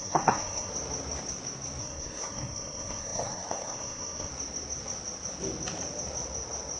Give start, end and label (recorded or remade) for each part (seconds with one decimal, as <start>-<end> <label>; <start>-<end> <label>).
0.0-0.7 remade; 0.7-1.8 recorded; 1.8-4.3 remade; 4.3-6.8 recorded